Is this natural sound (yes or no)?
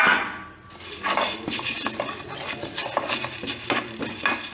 yes